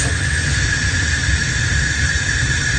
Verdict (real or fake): real